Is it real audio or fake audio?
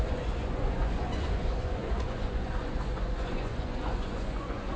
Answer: fake